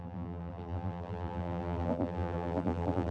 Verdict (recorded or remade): remade